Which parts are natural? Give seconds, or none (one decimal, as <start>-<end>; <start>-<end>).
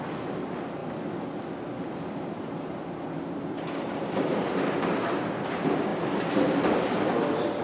0.0-7.6